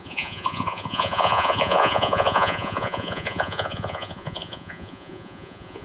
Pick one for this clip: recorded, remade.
remade